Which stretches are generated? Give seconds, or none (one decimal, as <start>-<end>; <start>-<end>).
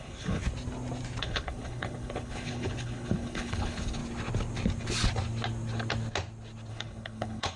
0.0-0.4; 1.2-4.0; 6.7-7.6